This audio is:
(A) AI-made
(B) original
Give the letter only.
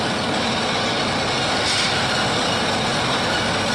B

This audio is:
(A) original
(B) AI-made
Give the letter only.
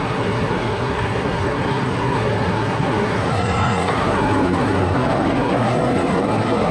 B